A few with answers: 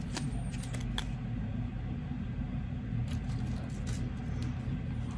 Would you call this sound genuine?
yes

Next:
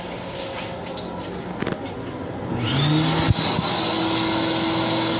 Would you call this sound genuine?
yes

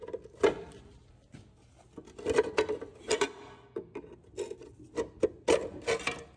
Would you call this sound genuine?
yes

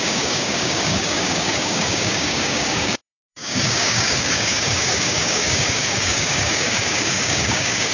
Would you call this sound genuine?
no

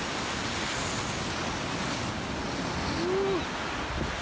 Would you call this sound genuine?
yes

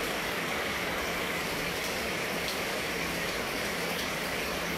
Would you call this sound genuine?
no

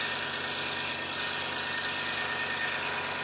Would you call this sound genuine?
yes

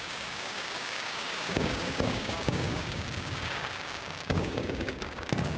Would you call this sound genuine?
no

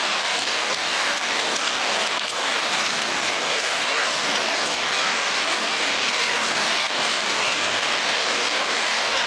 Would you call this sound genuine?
no